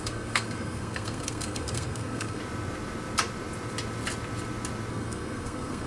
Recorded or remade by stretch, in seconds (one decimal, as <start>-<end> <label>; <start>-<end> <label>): 0.0-2.4 remade; 2.4-4.9 recorded; 4.9-5.9 remade